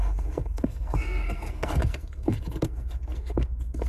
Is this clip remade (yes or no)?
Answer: yes